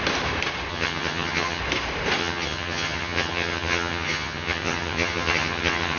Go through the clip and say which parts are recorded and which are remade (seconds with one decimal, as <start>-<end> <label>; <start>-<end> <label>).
0.0-0.7 recorded; 0.7-1.6 remade; 1.6-2.2 recorded; 2.2-6.0 remade